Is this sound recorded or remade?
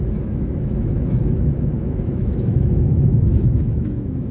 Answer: remade